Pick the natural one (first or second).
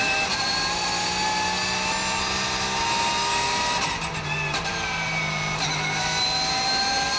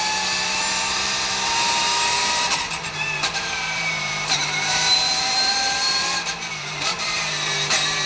first